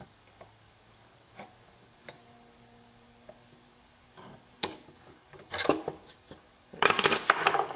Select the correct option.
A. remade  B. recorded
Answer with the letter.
A